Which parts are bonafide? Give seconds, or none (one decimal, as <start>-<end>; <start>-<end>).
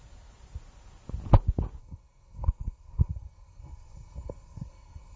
0.0-1.8